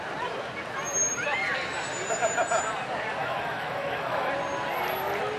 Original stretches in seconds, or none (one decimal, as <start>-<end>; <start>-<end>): 0.0-3.2; 4.3-5.4